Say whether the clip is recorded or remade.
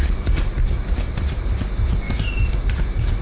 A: recorded